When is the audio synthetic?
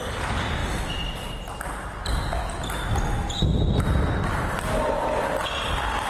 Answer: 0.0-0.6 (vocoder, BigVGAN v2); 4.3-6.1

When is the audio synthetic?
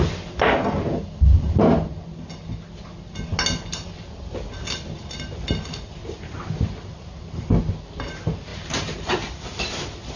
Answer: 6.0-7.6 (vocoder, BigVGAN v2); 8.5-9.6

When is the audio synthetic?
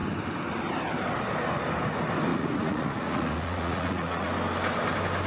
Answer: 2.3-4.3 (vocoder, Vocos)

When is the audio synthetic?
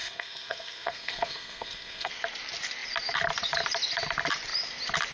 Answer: 0.0-2.1 (codec, SNAC)